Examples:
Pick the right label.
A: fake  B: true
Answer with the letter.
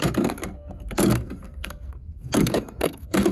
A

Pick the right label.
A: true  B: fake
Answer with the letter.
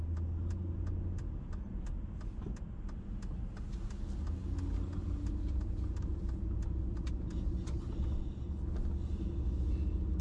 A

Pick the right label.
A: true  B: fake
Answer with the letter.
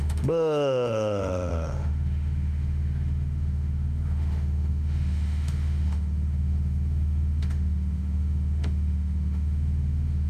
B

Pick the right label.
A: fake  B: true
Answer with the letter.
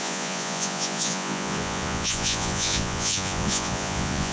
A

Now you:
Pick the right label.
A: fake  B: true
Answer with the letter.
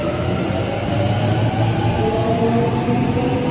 B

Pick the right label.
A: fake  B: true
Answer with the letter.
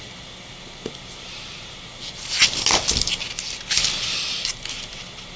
B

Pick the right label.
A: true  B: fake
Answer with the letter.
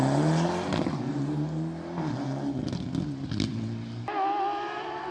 A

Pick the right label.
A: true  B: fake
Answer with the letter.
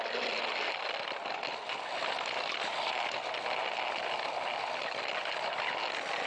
A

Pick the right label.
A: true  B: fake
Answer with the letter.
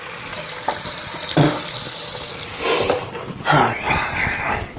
A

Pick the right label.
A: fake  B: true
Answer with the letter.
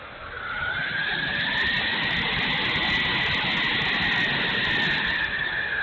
B